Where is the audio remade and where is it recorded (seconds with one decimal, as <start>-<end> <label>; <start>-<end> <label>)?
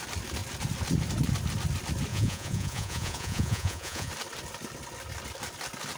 0.0-2.1 recorded; 2.1-4.1 remade; 4.1-6.0 recorded